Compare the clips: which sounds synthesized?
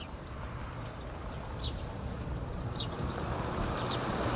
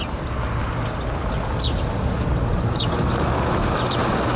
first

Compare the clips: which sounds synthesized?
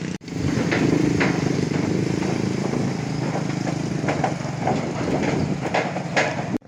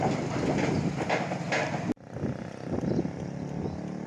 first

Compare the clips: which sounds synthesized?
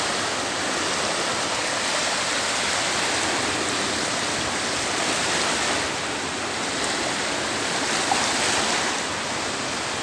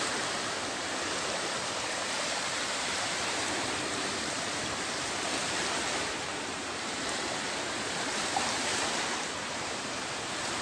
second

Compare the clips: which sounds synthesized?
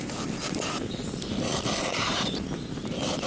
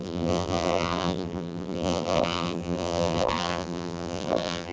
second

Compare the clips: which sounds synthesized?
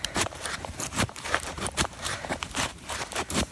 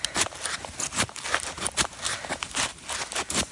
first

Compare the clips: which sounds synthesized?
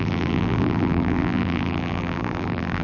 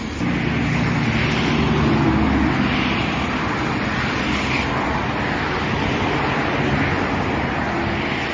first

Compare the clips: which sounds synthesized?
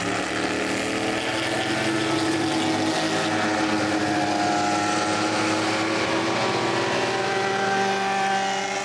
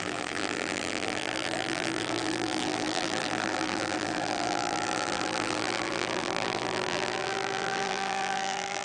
second